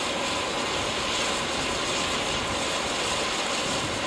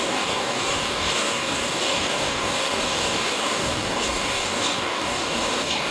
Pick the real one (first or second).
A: first